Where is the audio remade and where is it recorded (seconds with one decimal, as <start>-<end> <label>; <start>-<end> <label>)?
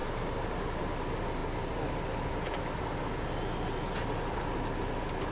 0.0-0.8 remade; 0.8-5.3 recorded